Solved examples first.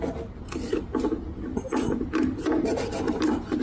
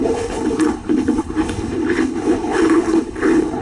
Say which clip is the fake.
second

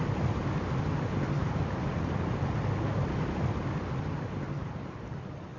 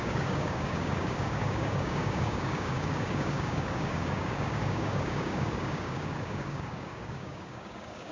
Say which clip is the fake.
second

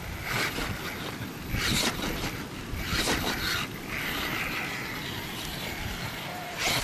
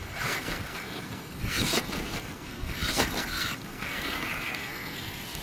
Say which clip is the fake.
second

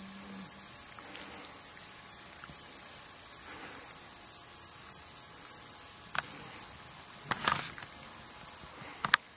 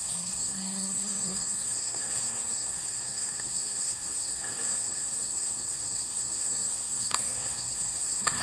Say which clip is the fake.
second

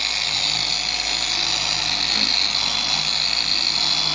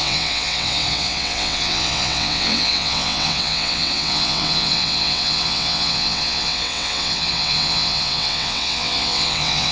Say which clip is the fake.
second